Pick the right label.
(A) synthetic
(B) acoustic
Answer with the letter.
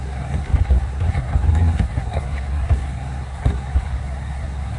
A